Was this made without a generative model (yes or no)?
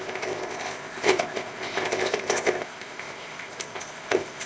no